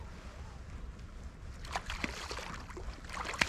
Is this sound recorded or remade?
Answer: recorded